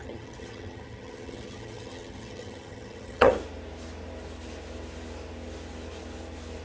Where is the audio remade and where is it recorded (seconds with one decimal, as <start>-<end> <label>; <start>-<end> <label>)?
0.0-3.3 remade; 3.3-6.6 recorded